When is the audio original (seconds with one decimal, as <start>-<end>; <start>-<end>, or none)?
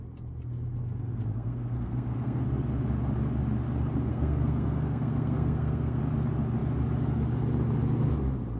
0.0-1.3; 2.4-4.1; 6.0-8.6